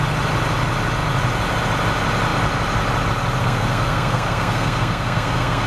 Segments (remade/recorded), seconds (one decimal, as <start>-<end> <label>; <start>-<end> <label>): 0.0-3.4 recorded; 3.4-5.7 remade